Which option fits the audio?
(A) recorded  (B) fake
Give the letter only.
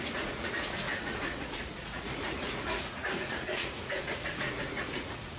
B